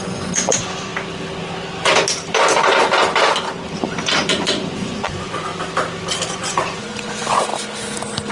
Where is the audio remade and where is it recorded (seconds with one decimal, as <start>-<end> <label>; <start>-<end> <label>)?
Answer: 0.0-0.9 remade; 0.9-4.3 recorded; 4.3-5.5 remade; 5.5-6.3 recorded; 6.3-7.5 remade; 7.5-8.3 recorded